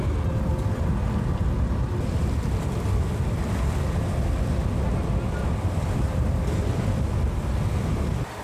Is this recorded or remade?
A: recorded